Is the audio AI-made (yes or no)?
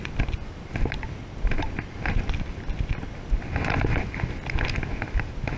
no